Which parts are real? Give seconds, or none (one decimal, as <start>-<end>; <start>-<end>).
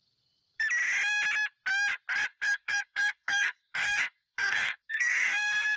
0.0-2.3